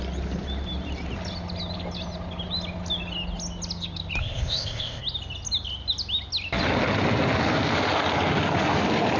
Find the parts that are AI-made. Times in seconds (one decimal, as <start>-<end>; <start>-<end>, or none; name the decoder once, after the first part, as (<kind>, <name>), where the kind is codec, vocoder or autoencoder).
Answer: 4.2-5.0 (codec, ZipCodec)